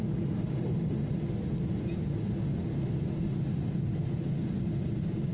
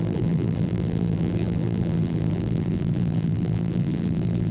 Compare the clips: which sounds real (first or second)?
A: first